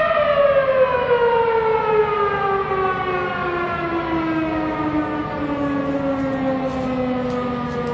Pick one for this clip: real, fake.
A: real